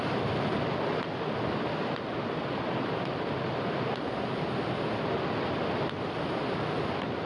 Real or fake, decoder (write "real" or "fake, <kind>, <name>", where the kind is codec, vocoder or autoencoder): real